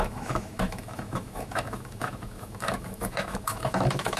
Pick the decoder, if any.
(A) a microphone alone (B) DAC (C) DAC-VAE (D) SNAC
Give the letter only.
C